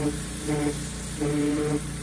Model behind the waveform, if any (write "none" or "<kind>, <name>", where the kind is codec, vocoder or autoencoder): vocoder, BigVGAN v2